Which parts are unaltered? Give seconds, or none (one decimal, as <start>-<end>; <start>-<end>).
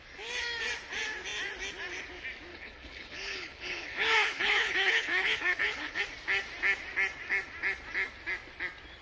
0.0-2.5; 6.0-9.0